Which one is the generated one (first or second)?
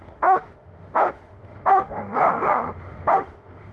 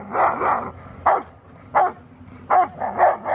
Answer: first